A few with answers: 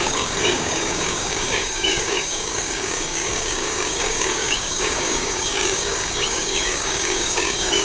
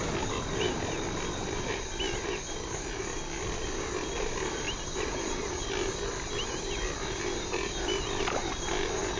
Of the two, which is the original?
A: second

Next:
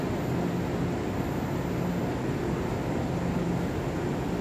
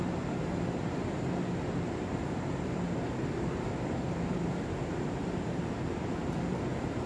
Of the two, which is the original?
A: first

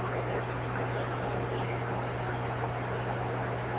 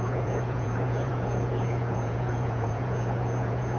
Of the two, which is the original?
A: first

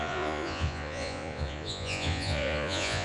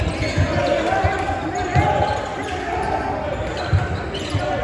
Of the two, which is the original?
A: second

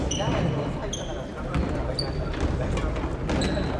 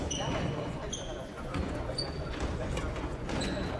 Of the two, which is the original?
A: first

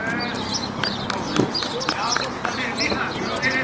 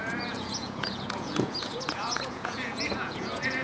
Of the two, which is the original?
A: first